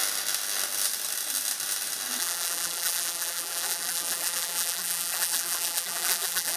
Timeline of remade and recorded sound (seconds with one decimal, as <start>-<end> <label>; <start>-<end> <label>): 0.0-2.2 recorded; 2.2-6.6 remade